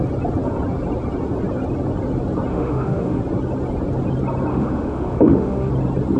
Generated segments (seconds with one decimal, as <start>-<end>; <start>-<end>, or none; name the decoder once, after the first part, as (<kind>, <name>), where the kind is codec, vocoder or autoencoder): 2.5-3.2 (autoencoder, DAC-VAE); 4.5-5.7